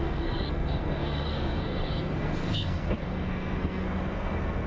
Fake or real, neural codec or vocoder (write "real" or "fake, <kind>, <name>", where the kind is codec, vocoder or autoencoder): fake, codec, SNAC